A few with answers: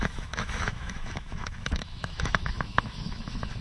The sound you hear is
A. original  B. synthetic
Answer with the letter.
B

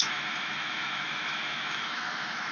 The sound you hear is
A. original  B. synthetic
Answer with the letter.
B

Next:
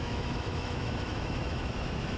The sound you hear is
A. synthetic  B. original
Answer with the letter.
A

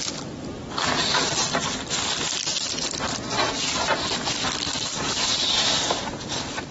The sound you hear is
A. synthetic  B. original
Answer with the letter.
B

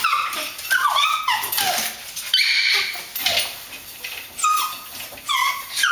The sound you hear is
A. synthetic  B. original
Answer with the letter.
B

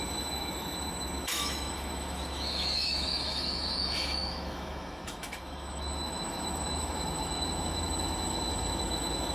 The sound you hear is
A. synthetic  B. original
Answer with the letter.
A